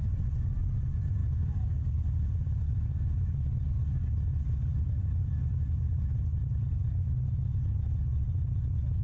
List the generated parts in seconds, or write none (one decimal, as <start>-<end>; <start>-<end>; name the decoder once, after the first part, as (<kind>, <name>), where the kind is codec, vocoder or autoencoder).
1.2-1.8 (codec, DAC)